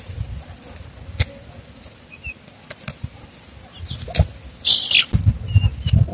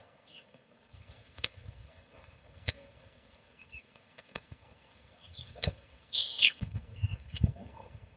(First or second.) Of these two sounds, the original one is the first